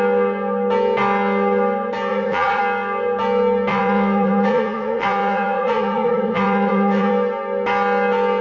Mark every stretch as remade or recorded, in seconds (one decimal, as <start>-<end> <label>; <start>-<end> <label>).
0.0-2.1 recorded; 2.1-2.6 remade; 2.6-3.7 recorded; 3.7-7.1 remade; 7.1-8.4 recorded